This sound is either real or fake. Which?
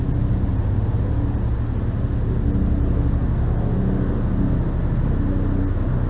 real